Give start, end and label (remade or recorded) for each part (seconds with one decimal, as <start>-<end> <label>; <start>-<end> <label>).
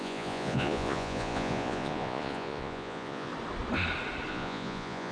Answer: 0.0-3.3 remade; 3.3-4.3 recorded; 4.3-5.1 remade